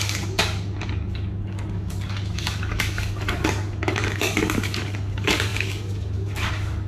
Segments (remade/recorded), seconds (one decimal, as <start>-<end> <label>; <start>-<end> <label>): 0.0-6.9 remade